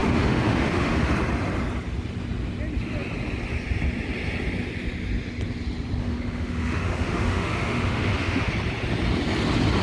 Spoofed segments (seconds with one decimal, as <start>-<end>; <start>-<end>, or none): 0.0-1.1; 6.0-8.5